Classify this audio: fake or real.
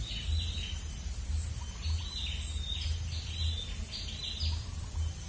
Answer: real